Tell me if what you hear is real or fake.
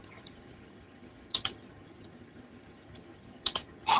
fake